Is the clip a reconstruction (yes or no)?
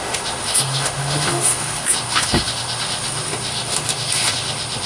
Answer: yes